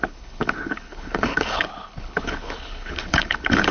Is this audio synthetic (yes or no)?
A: yes